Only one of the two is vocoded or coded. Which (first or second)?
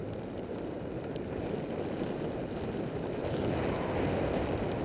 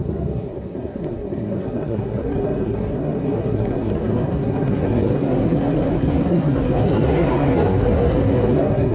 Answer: second